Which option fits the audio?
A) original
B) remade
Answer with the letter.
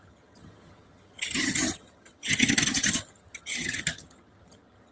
B